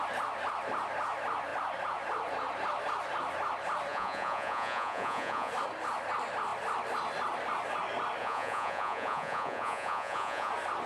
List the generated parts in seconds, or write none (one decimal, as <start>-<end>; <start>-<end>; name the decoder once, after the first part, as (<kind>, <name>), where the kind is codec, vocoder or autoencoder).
3.9-5.5 (vocoder, Vocos); 8.2-10.5